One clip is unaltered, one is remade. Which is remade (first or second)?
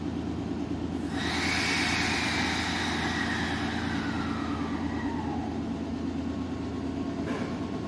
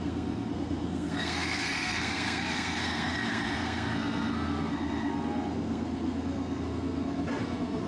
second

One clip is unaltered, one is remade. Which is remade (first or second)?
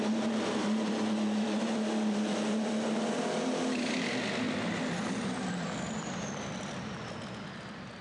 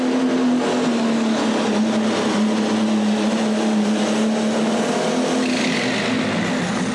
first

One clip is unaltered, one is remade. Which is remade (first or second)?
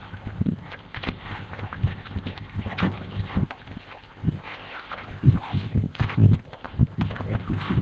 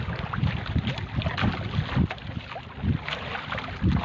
first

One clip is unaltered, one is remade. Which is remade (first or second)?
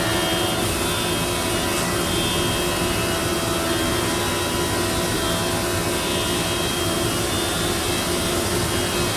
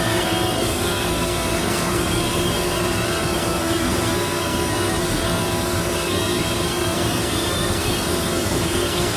second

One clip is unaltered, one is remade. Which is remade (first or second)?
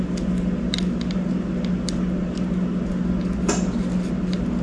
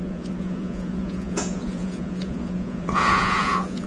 second